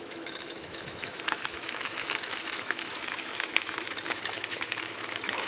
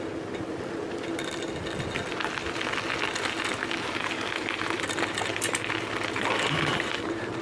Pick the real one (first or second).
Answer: second